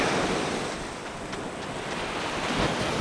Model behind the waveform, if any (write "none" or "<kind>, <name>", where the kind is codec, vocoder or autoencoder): none